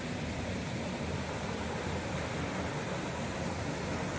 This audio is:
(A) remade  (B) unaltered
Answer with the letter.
B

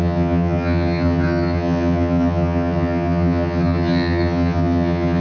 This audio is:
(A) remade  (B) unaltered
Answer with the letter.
A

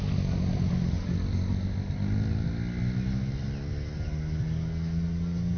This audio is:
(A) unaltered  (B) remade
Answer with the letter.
A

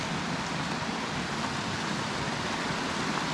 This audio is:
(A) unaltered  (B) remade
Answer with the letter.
A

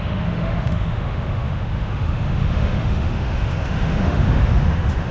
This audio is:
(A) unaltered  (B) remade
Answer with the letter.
B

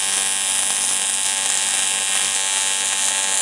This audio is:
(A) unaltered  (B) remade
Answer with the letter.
A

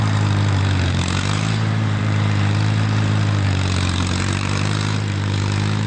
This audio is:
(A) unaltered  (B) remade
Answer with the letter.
B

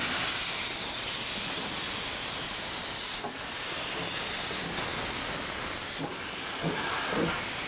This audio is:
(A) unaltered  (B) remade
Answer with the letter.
A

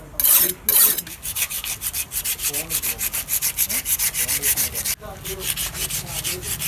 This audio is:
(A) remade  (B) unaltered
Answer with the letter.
B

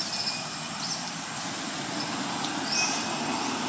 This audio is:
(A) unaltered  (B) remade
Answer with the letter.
A